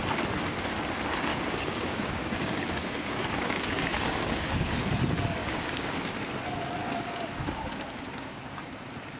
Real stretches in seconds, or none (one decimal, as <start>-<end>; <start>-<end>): 0.0-1.3; 4.7-5.4; 6.0-6.8; 8.7-9.2